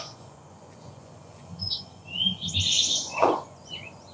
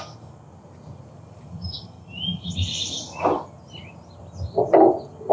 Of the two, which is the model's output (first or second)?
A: first